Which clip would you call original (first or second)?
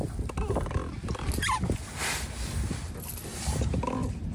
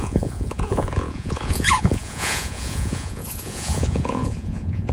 first